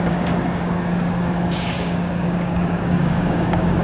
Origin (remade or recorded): remade